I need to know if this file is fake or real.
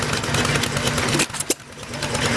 real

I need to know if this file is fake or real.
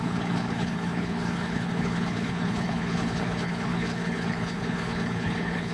fake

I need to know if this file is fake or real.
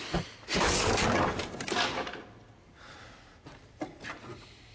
real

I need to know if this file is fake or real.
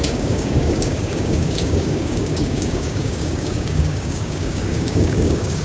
fake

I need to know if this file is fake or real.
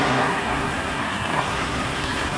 fake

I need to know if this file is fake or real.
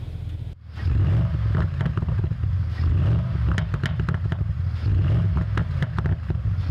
real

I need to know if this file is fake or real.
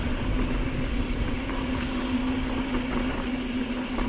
real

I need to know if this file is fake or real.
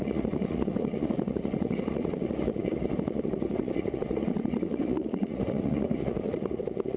fake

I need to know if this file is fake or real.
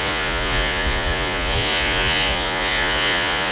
fake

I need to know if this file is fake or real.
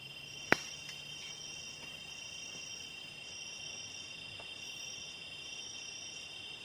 real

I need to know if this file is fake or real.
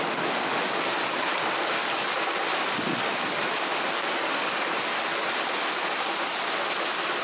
real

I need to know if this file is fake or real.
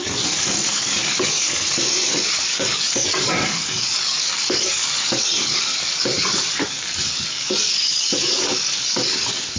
fake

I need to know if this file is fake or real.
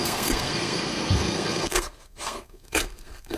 fake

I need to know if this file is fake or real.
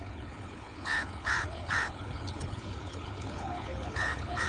fake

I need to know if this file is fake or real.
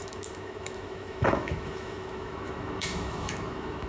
fake